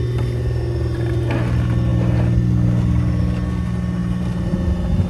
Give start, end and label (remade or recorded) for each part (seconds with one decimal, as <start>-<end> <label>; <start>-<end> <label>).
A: 0.0-4.0 recorded; 4.0-4.5 remade; 4.5-5.1 recorded